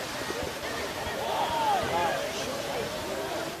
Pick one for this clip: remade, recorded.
recorded